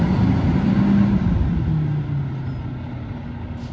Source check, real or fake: real